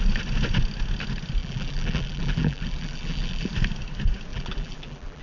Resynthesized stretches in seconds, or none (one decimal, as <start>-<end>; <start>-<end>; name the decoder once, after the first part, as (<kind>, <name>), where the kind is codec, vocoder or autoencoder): 1.4-3.5 (vocoder, BigVGAN v2); 4.3-5.2